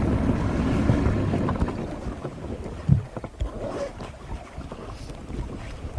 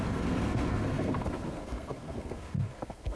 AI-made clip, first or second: second